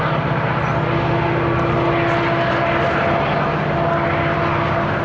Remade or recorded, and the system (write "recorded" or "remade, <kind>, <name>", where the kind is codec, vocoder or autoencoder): recorded